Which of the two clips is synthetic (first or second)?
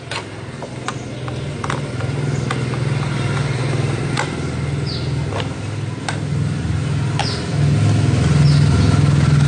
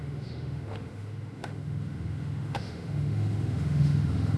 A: second